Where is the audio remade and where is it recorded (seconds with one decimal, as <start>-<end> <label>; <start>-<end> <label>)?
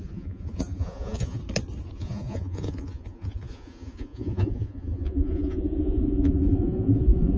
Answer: 0.0-1.4 remade; 1.4-1.9 recorded; 1.9-7.4 remade